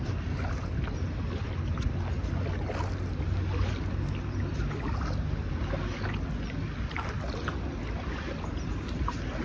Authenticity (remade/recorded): recorded